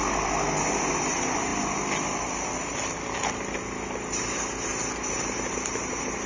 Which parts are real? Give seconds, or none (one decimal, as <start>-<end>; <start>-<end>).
0.0-6.3